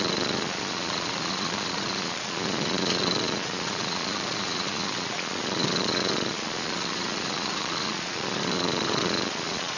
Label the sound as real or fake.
fake